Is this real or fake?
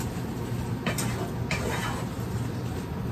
real